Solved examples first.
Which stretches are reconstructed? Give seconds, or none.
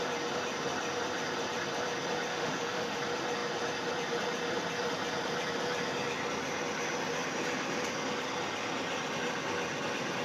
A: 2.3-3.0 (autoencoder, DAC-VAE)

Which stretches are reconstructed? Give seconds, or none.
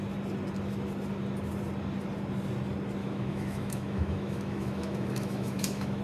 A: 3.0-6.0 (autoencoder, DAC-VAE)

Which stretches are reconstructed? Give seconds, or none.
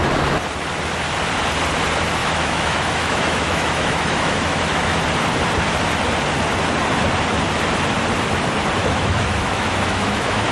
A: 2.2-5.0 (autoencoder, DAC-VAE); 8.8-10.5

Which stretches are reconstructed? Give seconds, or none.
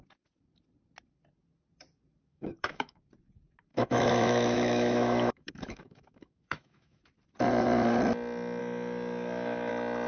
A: 2.3-3.0 (autoencoder, DAC-VAE); 3.7-7.0; 8.6-9.7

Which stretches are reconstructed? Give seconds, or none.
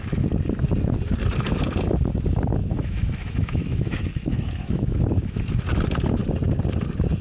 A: 2.6-5.4 (autoencoder, DAC-VAE)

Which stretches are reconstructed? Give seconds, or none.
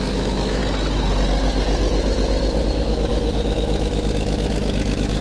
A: 0.0-0.6 (autoencoder, DAC-VAE); 2.7-5.2